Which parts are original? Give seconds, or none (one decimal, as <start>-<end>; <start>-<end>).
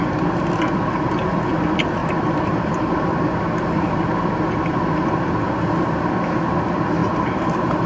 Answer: 0.0-2.0; 3.4-7.0